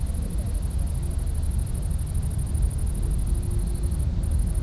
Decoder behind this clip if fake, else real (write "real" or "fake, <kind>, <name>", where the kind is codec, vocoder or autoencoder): real